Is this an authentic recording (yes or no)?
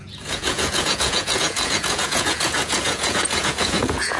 no